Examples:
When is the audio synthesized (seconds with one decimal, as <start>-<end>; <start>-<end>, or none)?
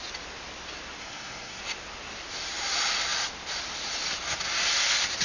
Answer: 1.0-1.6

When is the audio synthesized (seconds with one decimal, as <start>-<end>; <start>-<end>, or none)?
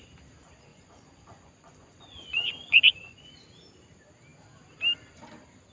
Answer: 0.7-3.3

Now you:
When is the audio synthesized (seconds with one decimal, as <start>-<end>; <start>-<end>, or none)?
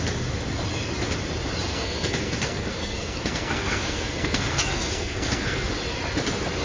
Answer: 1.7-5.7